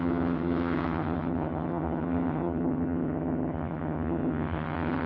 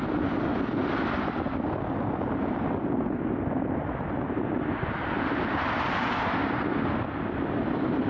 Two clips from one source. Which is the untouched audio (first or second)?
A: second